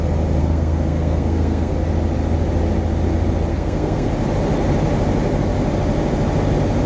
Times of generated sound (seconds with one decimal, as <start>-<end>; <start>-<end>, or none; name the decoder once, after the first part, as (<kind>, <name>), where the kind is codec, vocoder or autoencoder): 0.4-1.7 (codec, SNAC); 3.5-4.1

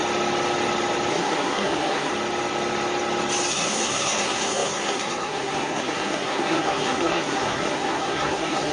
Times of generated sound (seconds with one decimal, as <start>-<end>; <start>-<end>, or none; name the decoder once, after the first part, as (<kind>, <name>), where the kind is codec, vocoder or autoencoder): 1.1-2.1 (codec, SNAC); 3.5-8.7

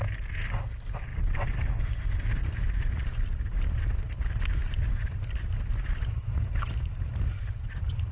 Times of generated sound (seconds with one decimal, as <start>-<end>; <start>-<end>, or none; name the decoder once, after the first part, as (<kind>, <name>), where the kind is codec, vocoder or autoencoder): none

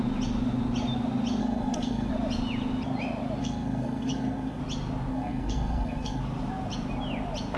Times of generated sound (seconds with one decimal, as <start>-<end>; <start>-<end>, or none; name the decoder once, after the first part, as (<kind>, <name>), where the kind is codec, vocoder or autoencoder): 1.4-2.1 (codec, SNAC); 3.4-4.6; 5.1-6.2